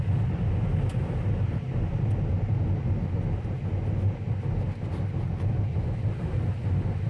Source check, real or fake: real